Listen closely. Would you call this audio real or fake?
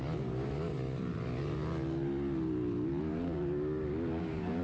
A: real